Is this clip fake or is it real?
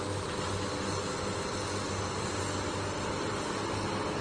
real